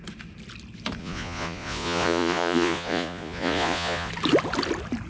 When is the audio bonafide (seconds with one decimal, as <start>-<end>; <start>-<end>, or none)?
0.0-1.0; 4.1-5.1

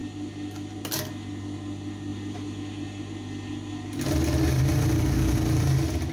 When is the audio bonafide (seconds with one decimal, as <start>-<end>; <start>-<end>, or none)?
0.0-6.1

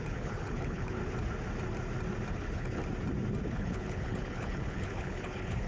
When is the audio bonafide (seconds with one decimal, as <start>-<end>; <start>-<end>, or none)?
1.0-2.3; 2.8-3.5

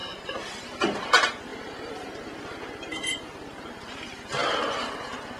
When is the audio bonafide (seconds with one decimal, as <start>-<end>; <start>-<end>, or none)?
none

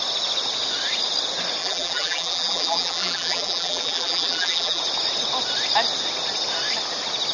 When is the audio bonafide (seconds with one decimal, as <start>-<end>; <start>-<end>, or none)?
0.0-1.6; 4.8-7.3